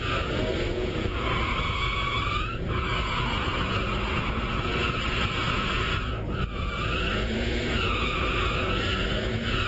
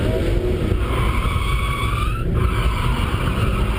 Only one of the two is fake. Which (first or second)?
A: first